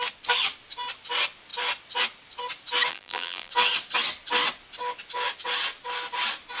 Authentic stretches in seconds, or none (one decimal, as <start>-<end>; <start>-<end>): 0.0-2.9; 3.5-6.6